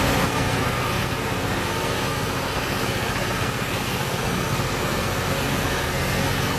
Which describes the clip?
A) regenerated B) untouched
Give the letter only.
A